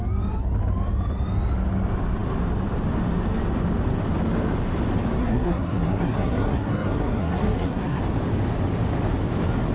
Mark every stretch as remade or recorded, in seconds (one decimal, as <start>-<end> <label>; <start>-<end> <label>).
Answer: 0.0-5.2 recorded; 5.2-8.0 remade; 8.0-9.7 recorded